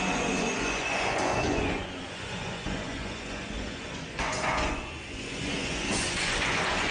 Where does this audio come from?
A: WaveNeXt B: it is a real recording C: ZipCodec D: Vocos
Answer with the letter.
D